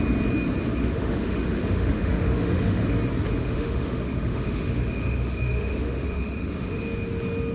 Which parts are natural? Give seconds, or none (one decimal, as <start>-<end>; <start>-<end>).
0.0-0.8; 2.9-3.4; 6.8-7.5